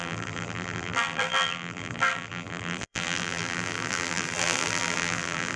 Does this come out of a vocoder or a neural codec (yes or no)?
yes